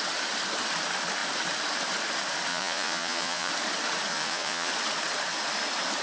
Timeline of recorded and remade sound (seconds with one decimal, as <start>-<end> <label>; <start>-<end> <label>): 0.0-2.5 recorded; 2.5-3.5 remade; 3.5-4.1 recorded; 4.1-4.7 remade; 4.7-6.0 recorded